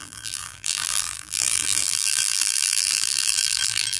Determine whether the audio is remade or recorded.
remade